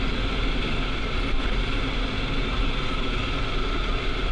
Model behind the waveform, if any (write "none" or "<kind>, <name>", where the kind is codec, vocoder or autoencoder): vocoder, BigVGAN v2